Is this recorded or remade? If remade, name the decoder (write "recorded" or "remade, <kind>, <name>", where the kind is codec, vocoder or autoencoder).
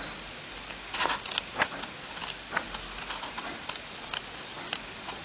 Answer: recorded